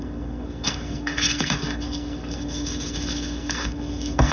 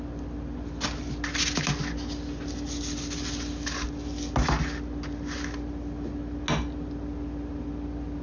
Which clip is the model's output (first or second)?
first